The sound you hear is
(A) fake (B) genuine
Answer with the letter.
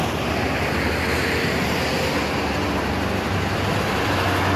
B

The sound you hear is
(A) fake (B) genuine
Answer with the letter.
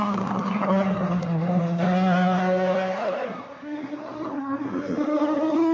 A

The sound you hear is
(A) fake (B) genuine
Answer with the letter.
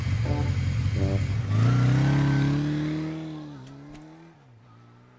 B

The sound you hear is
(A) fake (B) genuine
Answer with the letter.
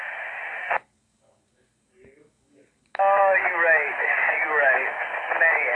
A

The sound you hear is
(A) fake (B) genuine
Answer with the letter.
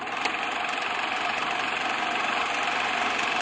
A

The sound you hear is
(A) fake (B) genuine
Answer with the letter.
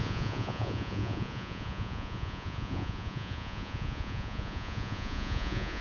A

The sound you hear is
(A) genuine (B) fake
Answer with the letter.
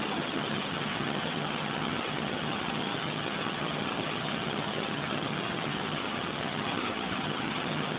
B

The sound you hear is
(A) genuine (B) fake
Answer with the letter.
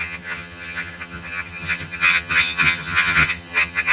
B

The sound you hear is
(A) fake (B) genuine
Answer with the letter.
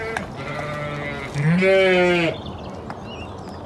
B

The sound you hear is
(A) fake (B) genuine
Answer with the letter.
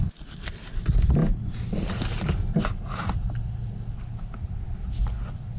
B